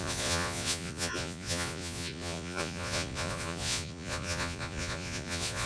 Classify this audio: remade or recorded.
remade